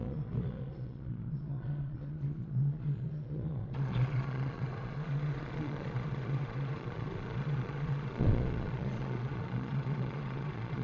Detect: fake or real fake